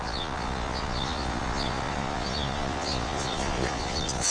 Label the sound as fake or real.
fake